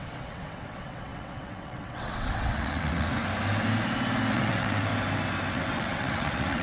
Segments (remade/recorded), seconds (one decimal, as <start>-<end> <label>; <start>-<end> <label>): 0.0-3.2 remade; 3.2-4.3 recorded; 4.3-4.9 remade; 4.9-5.5 recorded; 5.5-6.6 remade